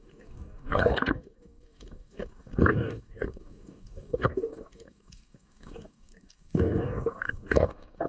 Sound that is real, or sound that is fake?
fake